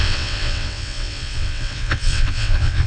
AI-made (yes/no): yes